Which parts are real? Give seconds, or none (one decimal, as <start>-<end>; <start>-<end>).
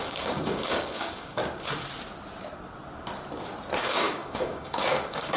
1.4-3.8